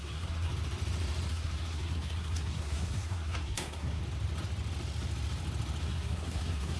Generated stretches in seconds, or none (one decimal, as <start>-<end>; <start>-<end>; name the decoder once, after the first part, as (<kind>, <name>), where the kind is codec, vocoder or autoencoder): 0.0-0.5 (codec, SNAC); 1.3-4.0; 5.8-6.8